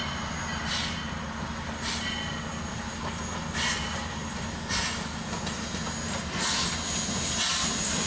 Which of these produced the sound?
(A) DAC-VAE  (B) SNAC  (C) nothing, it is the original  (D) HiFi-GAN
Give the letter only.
C